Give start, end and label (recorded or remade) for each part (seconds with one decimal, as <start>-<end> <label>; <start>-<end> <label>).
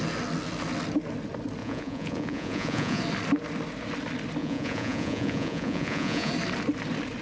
0.0-1.6 recorded; 1.6-3.0 remade; 3.0-4.4 recorded; 4.4-6.3 remade; 6.3-7.2 recorded